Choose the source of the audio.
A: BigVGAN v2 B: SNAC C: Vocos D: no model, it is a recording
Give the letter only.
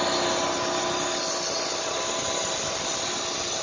D